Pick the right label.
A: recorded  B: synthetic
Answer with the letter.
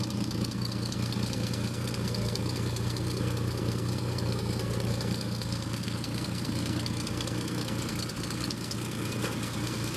B